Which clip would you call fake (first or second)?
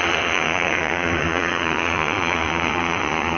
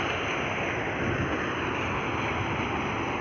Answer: first